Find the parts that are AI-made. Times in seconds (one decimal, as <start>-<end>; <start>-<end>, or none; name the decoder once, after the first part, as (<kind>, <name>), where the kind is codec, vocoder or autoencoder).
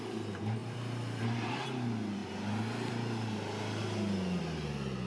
0.6-1.5 (vocoder, BigVGAN v2); 3.8-4.4